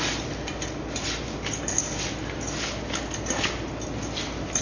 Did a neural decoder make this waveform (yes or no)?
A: no